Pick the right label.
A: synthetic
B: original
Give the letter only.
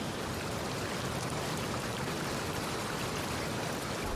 A